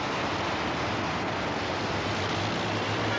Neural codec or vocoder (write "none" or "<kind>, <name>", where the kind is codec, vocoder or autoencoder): none